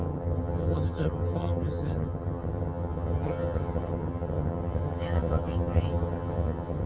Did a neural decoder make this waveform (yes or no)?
yes